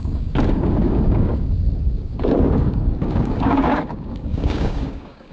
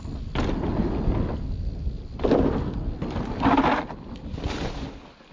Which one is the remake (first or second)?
first